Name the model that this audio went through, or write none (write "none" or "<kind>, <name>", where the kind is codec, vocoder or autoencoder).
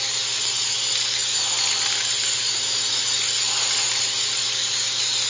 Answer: none